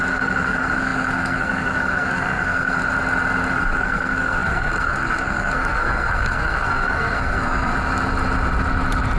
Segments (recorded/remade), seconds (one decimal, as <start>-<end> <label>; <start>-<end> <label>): 0.0-2.8 remade; 2.8-3.5 recorded; 3.5-7.7 remade; 7.7-9.2 recorded